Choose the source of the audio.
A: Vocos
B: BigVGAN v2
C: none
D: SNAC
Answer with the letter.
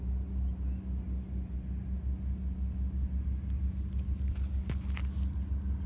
C